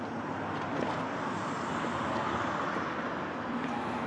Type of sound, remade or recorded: recorded